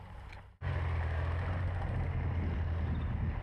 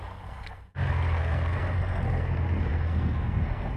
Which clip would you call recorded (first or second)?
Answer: first